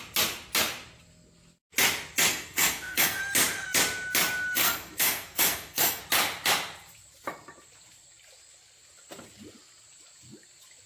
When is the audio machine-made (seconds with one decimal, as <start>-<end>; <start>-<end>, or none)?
2.3-3.2; 4.6-6.0